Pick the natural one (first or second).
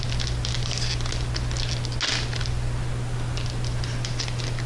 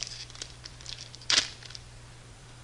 first